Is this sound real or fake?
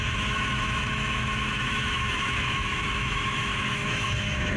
fake